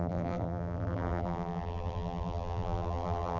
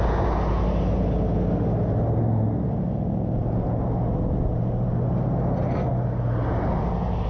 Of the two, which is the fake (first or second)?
first